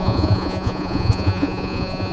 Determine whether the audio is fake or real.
fake